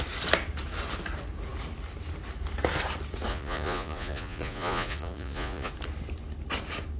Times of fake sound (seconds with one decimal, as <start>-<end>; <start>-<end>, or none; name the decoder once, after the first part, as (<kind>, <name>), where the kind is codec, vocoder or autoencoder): 3.3-5.7 (vocoder, Vocos)